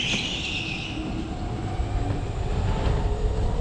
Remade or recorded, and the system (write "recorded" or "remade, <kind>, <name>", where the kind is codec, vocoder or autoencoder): recorded